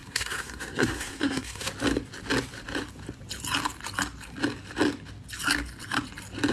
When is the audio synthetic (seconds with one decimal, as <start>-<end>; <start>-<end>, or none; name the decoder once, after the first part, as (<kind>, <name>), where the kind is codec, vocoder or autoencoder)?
0.0-1.7 (codec, SNAC)